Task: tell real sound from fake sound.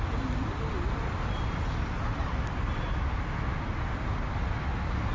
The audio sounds real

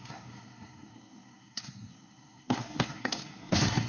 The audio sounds fake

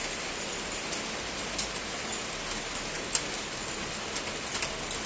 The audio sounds real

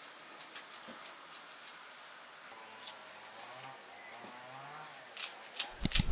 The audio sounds real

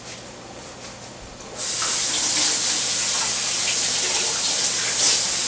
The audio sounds real